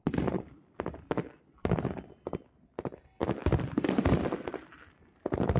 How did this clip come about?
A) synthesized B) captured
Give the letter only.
B